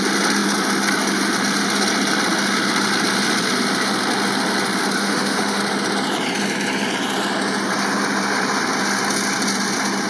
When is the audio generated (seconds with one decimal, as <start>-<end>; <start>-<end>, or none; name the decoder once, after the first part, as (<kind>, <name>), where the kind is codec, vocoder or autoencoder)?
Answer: 5.0-5.6 (autoencoder, DAC-VAE)